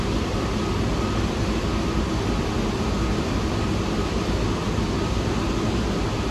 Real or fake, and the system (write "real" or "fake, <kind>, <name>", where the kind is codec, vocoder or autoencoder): real